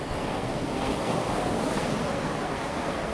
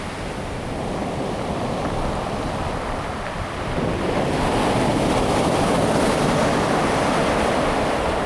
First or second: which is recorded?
second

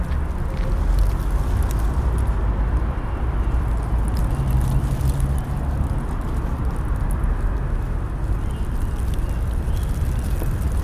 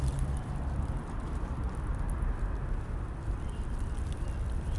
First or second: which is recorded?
first